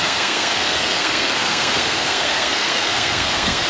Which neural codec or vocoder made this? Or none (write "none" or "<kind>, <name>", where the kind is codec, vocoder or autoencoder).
codec, SNAC